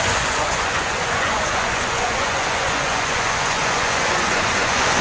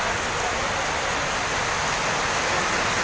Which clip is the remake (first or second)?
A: first